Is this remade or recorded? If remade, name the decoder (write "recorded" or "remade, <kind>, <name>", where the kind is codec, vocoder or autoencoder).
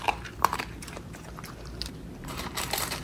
remade, vocoder, BigVGAN v2